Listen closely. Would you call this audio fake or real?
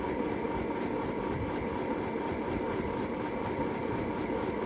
real